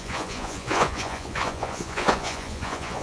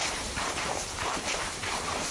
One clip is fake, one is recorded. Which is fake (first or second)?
first